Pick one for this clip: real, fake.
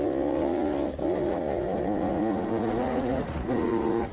fake